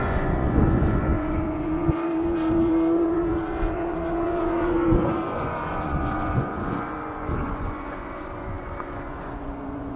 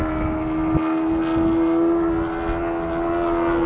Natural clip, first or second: second